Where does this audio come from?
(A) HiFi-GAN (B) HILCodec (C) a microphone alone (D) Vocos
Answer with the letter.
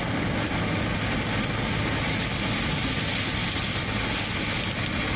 C